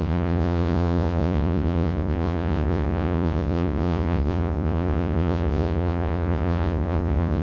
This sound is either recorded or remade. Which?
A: remade